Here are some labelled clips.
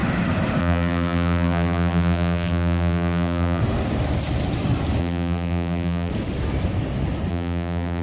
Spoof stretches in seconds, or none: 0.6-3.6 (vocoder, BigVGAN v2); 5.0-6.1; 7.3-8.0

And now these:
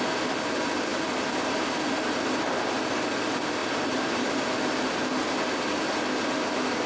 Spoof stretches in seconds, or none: 0.9-2.8 (vocoder, BigVGAN v2); 3.6-4.4

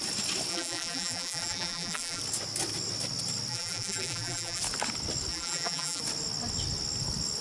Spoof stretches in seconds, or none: 0.5-2.2 (vocoder, BigVGAN v2); 3.5-4.6; 5.3-6.0

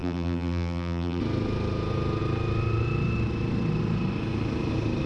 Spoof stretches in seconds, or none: 0.0-1.2 (vocoder, BigVGAN v2)

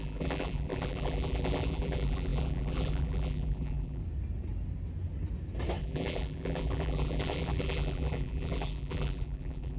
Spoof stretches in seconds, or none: 0.0-4.0 (vocoder, BigVGAN v2); 5.8-9.8

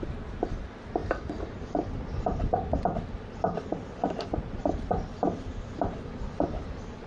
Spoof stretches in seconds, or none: 1.0-1.6 (vocoder, BigVGAN v2)

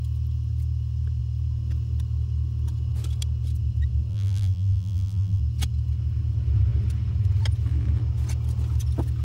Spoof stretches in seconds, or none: 4.1-5.4 (vocoder, BigVGAN v2)

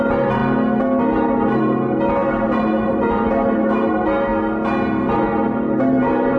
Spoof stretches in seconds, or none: 0.0-0.4 (vocoder, BigVGAN v2); 1.0-4.3; 5.1-6.4